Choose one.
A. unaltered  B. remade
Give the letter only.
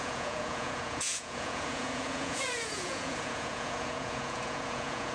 B